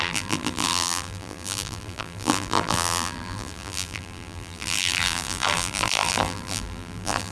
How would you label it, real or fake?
fake